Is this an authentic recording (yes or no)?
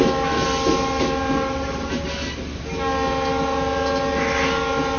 yes